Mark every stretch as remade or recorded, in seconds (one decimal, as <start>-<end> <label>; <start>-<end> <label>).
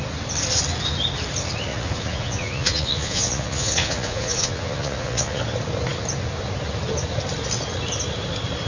0.0-1.7 recorded; 1.7-5.4 remade; 5.4-8.7 recorded